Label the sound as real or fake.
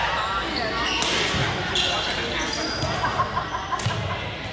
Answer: real